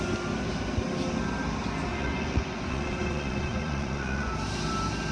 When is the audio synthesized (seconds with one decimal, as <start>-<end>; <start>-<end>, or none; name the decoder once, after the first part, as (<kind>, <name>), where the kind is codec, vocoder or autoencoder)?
1.9-4.3 (vocoder, Vocos)